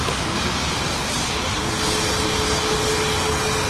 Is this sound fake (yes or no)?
no